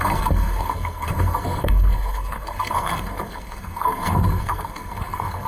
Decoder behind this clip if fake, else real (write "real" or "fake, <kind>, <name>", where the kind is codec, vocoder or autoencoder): fake, codec, SNAC